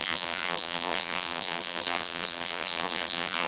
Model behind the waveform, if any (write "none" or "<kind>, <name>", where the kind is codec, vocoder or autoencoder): vocoder, BigVGAN v2